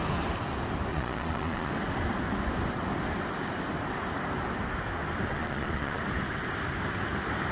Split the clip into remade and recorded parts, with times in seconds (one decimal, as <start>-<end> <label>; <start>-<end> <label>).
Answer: 0.0-0.9 recorded; 0.9-1.7 remade; 1.7-5.3 recorded; 5.3-6.0 remade; 6.0-7.5 recorded